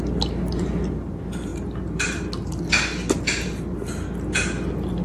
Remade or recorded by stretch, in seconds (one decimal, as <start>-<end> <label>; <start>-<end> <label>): 0.0-5.0 recorded